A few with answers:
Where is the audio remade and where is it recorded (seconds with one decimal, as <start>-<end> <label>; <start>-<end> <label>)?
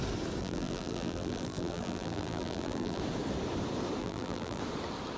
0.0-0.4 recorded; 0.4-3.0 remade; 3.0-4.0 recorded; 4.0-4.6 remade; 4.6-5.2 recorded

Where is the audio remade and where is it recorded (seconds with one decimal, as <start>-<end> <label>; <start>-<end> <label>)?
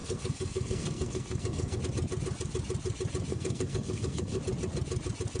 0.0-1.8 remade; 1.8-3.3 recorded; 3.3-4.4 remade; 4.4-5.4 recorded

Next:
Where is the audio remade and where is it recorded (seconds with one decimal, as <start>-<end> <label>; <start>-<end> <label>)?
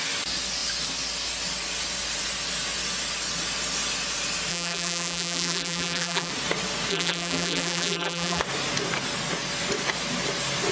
0.0-4.5 recorded; 4.5-6.3 remade; 6.3-6.9 recorded; 6.9-8.4 remade; 8.4-10.7 recorded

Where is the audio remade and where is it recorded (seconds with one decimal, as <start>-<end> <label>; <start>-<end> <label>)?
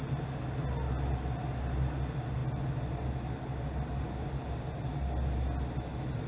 0.0-6.3 recorded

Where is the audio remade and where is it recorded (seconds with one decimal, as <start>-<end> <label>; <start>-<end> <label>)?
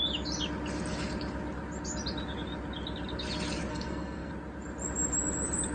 0.0-3.7 recorded; 3.7-4.3 remade; 4.3-5.7 recorded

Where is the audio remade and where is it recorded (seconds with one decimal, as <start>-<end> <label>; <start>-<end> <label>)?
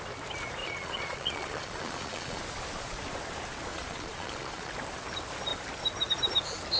0.0-0.6 recorded; 0.6-2.4 remade; 2.4-3.7 recorded; 3.7-4.7 remade; 4.7-6.8 recorded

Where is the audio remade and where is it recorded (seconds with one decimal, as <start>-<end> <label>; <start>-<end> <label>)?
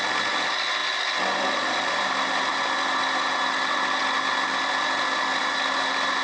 0.0-6.2 recorded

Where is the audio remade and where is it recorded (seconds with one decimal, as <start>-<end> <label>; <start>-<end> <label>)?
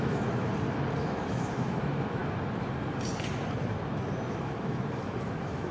0.0-0.5 remade; 0.5-1.0 recorded; 1.0-2.2 remade; 2.2-4.3 recorded; 4.3-5.7 remade